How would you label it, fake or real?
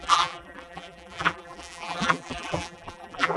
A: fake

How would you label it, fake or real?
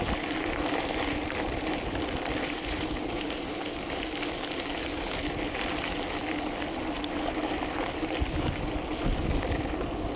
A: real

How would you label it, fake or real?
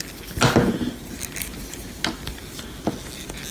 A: real